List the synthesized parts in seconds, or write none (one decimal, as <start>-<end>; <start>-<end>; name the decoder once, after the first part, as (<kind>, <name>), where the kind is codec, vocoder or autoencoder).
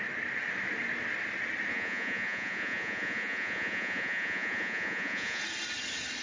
1.7-5.4 (vocoder, Vocos)